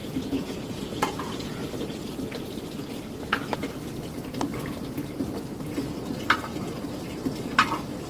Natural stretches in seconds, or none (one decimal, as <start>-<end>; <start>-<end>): 1.6-8.1